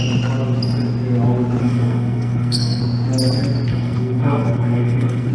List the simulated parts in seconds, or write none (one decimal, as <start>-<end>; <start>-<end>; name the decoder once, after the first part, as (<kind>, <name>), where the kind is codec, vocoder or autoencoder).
1.6-2.8 (codec, SNAC); 3.7-5.3